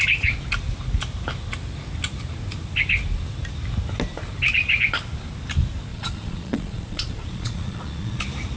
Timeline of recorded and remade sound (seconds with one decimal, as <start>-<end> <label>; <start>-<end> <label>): 0.0-5.9 recorded; 5.9-8.2 remade; 8.2-8.6 recorded